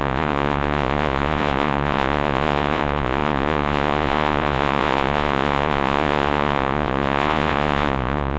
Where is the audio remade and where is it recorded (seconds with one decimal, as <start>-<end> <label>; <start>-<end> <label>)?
0.0-8.4 remade